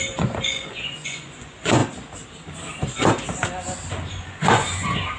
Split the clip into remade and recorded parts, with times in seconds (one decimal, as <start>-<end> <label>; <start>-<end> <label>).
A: 0.0-1.8 remade; 1.8-4.1 recorded; 4.1-5.2 remade